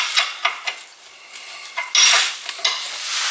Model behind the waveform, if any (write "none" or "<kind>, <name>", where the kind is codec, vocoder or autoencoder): none